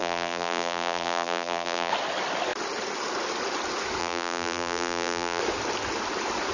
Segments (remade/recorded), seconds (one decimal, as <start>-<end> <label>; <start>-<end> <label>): 0.0-1.9 remade; 1.9-4.0 recorded; 4.0-5.4 remade; 5.4-6.5 recorded